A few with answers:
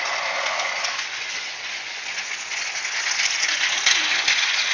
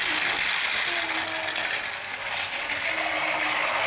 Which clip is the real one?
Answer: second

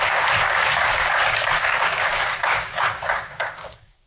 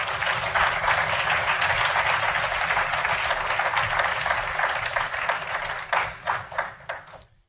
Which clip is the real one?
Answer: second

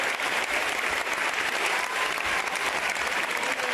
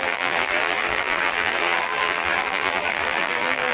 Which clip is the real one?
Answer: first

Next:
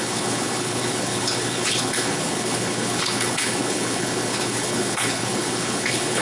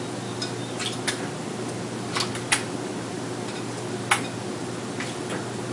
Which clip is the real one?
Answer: second